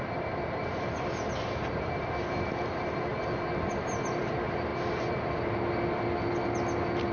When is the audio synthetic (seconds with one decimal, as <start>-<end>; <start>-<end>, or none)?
0.0-3.1; 3.8-4.7